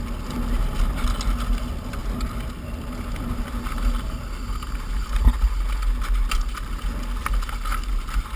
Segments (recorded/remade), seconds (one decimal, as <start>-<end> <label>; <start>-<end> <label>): 0.0-8.4 recorded